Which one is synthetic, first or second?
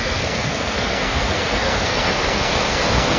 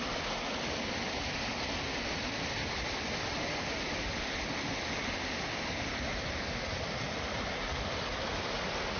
first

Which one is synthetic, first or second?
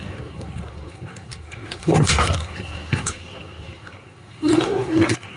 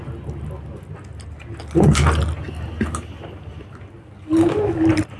first